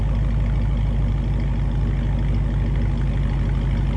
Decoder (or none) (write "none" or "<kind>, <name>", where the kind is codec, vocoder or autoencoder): none